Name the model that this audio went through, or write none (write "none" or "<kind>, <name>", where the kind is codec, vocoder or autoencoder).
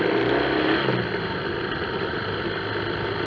none